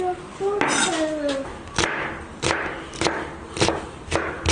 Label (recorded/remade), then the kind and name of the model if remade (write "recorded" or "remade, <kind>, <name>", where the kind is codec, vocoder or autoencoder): recorded